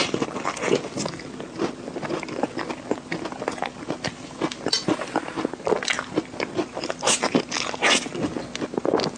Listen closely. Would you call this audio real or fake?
real